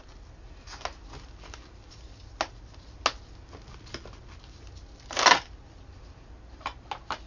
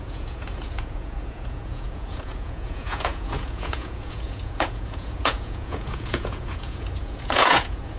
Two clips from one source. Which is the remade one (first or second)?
second